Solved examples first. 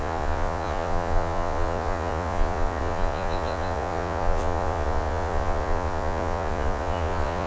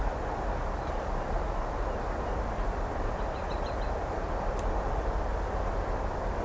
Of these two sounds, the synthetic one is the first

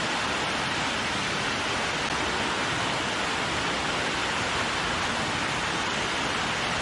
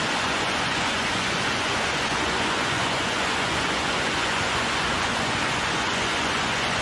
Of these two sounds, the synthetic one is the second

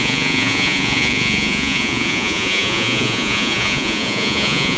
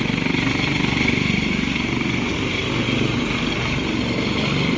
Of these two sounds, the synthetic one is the first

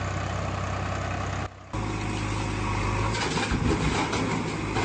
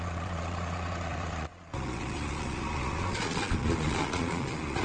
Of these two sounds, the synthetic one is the second